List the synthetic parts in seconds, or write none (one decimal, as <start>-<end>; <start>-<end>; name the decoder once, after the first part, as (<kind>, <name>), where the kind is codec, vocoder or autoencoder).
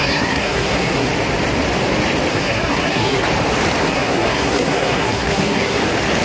0.0-1.1 (codec, SNAC); 2.3-3.2; 3.8-5.8